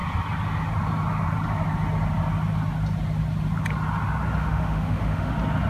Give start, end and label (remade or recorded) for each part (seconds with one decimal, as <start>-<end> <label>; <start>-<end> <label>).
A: 0.0-4.4 recorded; 4.4-5.3 remade; 5.3-5.7 recorded